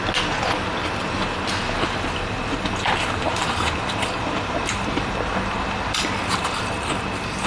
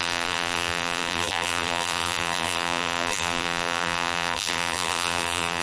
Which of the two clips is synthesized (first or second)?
second